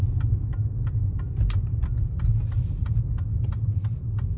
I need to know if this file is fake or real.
real